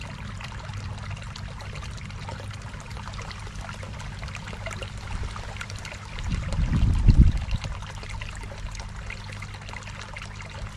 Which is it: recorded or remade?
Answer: recorded